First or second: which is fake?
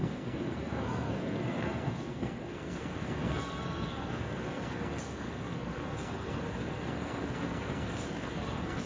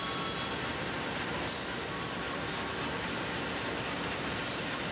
first